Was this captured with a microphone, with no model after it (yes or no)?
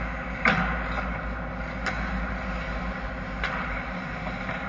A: yes